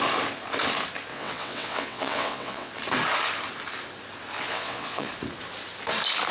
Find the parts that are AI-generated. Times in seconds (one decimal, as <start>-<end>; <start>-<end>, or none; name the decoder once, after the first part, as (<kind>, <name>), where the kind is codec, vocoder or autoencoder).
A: 1.1-2.7 (vocoder, WaveNeXt); 4.5-5.1